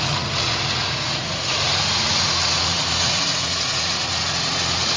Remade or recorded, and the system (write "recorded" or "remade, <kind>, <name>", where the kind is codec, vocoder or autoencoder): remade, vocoder, Vocos